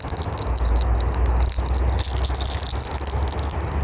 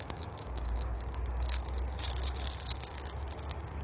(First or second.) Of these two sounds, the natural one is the first